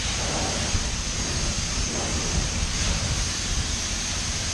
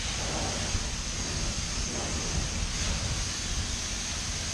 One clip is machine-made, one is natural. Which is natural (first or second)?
second